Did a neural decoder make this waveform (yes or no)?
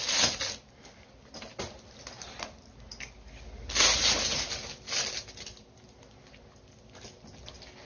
no